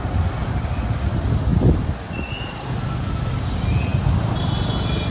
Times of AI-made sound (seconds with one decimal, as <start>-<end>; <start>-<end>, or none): none